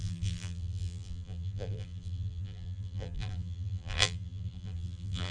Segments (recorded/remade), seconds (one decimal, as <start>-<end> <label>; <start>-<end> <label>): 0.0-5.3 remade